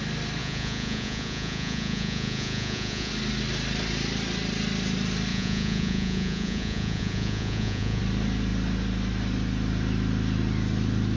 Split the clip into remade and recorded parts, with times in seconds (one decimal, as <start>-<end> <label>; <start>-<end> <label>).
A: 0.0-0.4 recorded; 0.4-3.1 remade; 3.1-5.3 recorded; 5.3-8.0 remade; 8.0-11.2 recorded